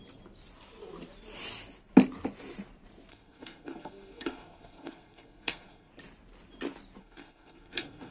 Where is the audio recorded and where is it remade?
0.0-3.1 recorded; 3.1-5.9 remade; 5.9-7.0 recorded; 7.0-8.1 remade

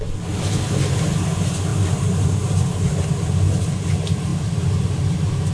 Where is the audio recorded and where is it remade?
0.0-5.5 recorded

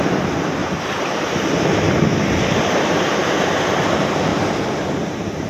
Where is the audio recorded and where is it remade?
0.0-0.6 recorded; 0.6-3.9 remade; 3.9-4.3 recorded; 4.3-5.5 remade

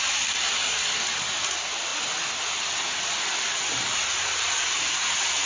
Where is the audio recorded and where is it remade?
0.0-5.5 recorded

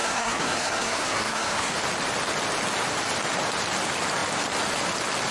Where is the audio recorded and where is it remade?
0.0-1.7 remade; 1.7-5.3 recorded

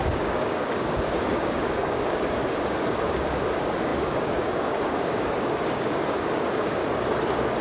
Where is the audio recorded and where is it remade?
0.0-6.8 remade; 6.8-7.6 recorded